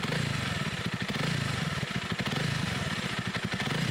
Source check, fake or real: real